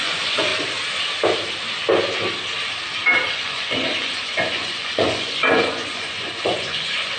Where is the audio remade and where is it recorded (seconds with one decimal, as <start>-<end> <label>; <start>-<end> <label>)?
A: 0.0-0.5 remade; 0.5-3.3 recorded; 3.3-7.2 remade